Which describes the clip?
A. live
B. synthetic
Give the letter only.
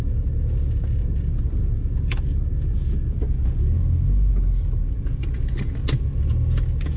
A